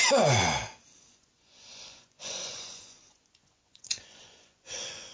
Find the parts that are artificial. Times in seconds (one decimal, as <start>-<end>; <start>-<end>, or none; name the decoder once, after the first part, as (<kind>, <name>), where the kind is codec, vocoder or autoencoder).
1.0-5.1 (vocoder, Vocos)